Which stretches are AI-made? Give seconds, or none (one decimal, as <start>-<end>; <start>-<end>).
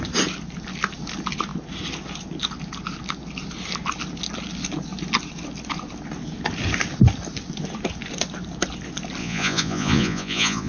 9.2-10.7